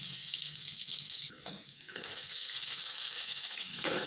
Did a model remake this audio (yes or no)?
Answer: yes